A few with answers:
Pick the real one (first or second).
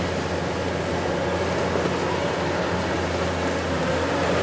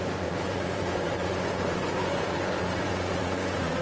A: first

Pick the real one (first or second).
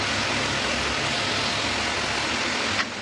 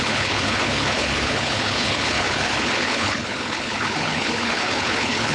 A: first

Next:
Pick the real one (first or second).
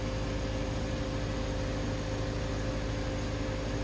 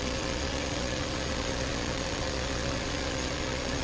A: first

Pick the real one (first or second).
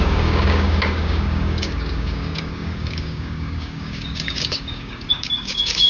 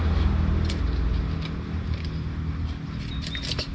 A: second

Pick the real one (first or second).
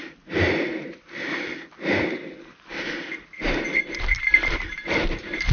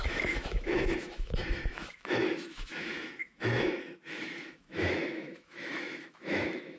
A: first